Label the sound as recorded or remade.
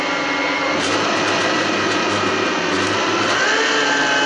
recorded